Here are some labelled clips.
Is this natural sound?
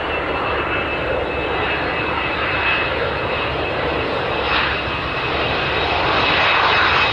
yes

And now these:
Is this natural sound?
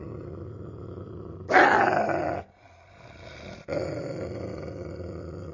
yes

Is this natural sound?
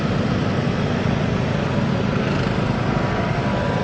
yes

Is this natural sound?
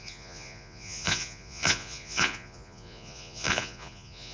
no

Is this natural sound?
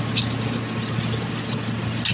yes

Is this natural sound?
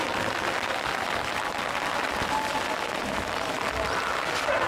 yes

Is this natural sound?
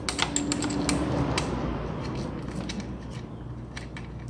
yes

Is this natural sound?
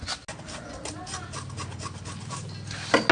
yes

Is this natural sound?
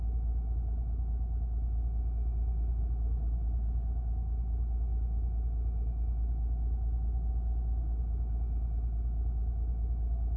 yes